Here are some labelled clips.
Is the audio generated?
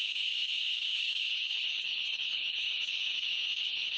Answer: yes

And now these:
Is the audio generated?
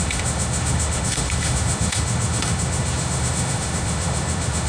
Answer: yes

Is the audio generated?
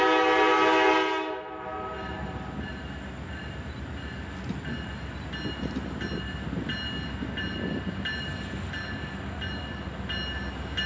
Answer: no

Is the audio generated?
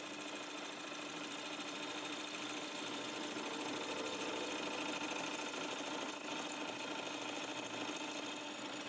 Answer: no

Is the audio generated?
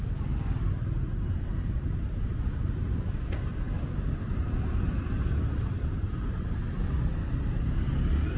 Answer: no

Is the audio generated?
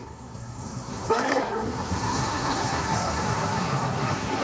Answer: yes